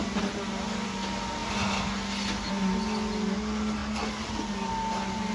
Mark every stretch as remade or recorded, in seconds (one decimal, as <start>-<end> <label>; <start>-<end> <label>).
0.0-5.3 recorded